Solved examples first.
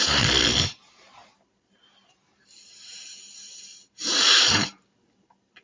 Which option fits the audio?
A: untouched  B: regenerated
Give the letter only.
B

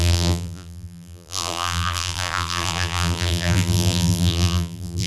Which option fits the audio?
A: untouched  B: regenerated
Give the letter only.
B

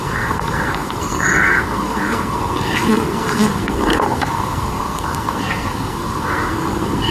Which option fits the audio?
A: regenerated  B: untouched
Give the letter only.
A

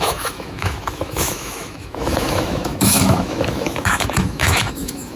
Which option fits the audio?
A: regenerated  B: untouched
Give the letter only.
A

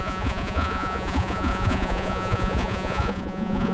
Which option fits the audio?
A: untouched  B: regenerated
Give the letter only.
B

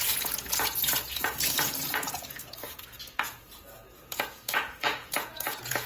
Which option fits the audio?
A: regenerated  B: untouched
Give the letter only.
A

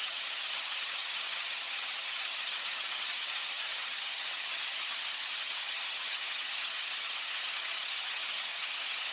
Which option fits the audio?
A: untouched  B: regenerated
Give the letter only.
B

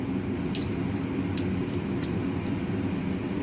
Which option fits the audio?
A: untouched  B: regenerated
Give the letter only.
A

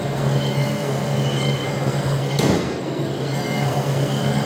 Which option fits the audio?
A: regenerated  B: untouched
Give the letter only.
A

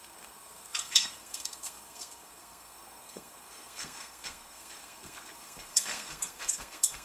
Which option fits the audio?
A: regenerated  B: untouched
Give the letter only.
A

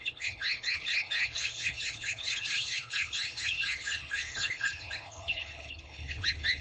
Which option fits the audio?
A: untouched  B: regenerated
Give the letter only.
B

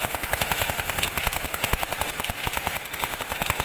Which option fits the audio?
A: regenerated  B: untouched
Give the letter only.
A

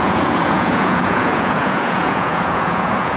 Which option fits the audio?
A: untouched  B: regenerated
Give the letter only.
B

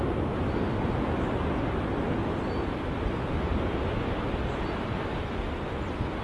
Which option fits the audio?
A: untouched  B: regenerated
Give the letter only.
A